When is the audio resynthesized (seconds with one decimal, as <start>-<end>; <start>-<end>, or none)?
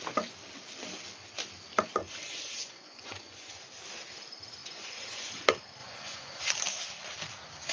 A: 2.0-3.6; 4.6-5.3; 5.8-6.5